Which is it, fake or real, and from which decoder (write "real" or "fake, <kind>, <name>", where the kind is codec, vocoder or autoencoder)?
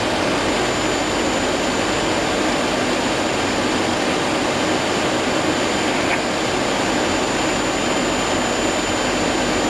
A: real